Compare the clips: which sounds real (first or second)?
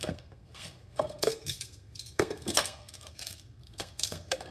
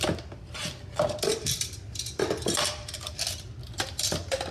second